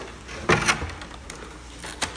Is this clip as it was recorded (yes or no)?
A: yes